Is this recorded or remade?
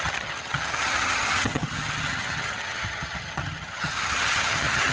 remade